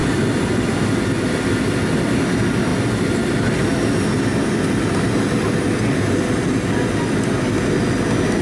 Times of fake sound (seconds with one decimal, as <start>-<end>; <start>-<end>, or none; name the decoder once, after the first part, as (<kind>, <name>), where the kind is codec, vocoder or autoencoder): none